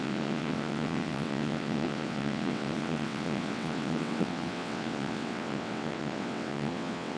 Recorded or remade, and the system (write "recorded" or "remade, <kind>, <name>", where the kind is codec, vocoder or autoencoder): remade, vocoder, WaveNeXt